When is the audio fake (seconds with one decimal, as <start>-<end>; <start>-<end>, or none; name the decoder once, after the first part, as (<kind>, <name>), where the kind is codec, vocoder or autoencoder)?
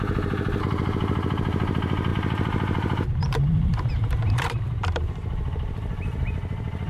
0.0-6.9 (vocoder, BigVGAN v2)